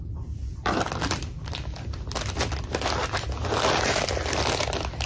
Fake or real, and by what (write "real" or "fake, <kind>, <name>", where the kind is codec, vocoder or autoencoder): fake, vocoder, BigVGAN v2